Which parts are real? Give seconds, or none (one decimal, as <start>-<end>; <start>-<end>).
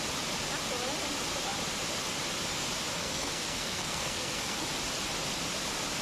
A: 0.0-3.0; 4.6-6.0